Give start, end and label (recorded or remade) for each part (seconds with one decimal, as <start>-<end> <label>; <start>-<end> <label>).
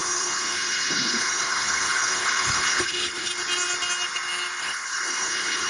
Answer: 0.0-3.3 remade; 3.3-4.6 recorded; 4.6-5.7 remade